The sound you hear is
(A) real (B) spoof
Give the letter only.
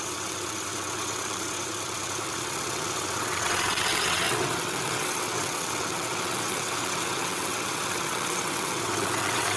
B